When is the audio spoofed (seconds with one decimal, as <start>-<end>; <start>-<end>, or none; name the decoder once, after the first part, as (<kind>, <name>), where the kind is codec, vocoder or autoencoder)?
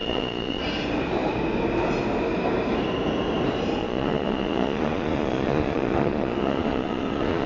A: 0.0-0.6 (vocoder, Vocos); 3.8-7.5